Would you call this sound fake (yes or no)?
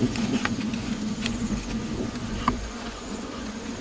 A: yes